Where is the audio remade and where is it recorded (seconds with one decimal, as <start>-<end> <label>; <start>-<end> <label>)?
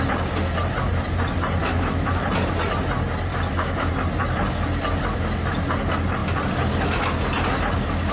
0.0-1.6 recorded; 1.6-2.2 remade; 2.2-3.3 recorded; 3.3-3.9 remade; 3.9-8.1 recorded